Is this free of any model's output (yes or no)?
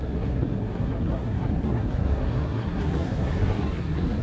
no